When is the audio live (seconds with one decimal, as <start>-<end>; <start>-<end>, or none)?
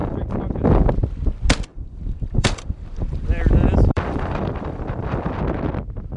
0.8-1.7; 5.4-6.2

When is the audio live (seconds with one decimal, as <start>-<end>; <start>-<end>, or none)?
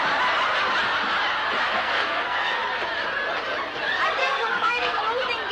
0.0-1.7; 2.6-4.2; 5.0-5.5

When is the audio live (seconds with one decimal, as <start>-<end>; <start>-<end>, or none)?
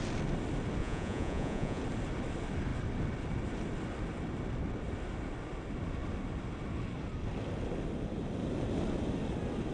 0.0-0.8; 1.8-9.7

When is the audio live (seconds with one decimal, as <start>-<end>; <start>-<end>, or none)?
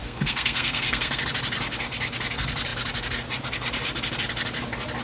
1.2-5.0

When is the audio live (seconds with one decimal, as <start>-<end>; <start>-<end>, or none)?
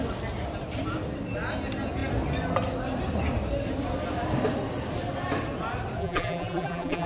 0.0-6.0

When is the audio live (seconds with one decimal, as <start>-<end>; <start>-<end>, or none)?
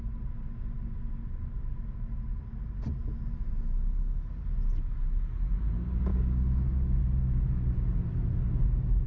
0.0-6.1; 7.0-9.1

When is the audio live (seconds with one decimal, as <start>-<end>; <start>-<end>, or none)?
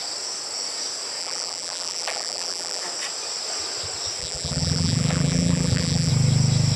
0.0-1.2; 2.8-4.2; 6.1-6.8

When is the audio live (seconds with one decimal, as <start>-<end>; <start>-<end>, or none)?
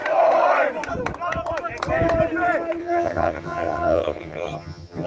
0.0-2.8